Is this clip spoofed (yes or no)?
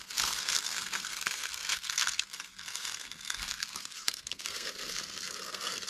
yes